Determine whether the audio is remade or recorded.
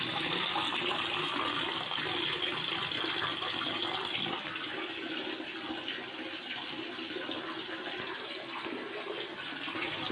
recorded